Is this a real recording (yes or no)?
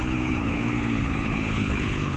no